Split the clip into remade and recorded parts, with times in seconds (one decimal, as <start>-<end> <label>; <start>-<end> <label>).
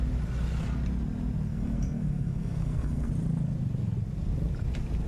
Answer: 0.0-1.5 recorded; 1.5-3.1 remade; 3.1-5.1 recorded